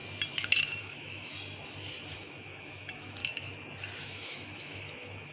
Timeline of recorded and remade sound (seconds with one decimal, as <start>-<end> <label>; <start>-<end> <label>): 0.0-0.8 recorded; 0.8-1.3 remade; 1.3-2.1 recorded; 2.1-3.2 remade; 3.2-4.0 recorded; 4.0-5.3 remade